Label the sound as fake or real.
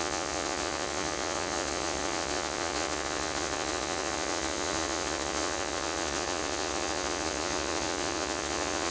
fake